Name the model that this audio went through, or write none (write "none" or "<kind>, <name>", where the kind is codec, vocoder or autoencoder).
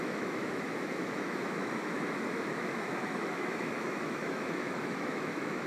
autoencoder, DAC-VAE